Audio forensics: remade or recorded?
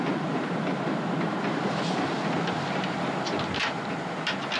recorded